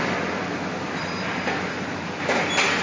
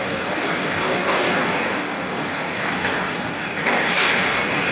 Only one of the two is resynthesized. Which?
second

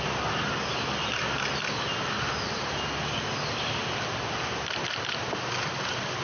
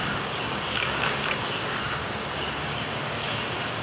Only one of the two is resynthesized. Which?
second